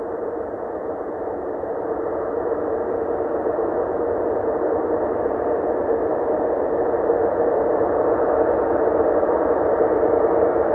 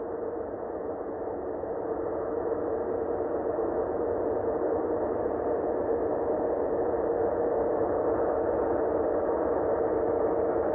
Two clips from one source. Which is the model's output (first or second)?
first